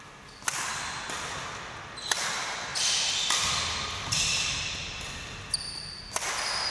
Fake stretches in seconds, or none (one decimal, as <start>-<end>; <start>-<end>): none